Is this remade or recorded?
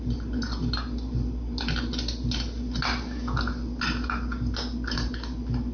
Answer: recorded